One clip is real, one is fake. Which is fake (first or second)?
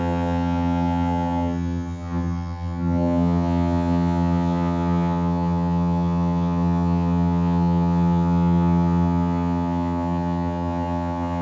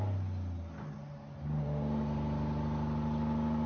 first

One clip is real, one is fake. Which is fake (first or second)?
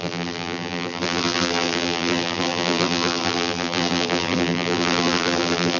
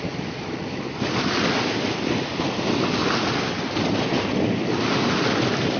first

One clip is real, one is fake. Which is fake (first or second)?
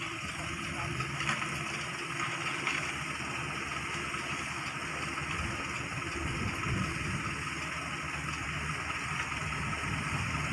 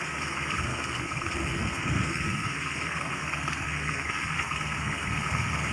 second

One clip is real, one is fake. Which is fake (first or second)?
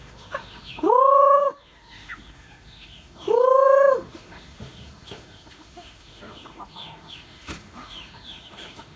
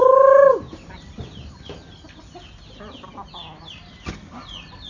first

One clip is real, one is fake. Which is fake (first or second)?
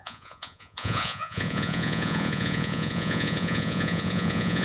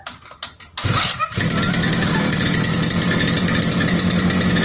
first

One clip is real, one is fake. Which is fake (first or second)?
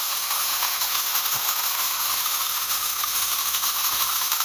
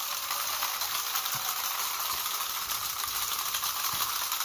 first